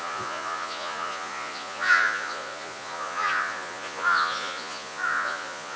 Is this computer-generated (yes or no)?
yes